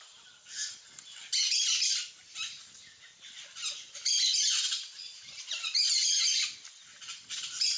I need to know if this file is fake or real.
real